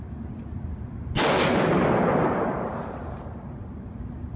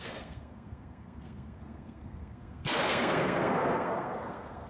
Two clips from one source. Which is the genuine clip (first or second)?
first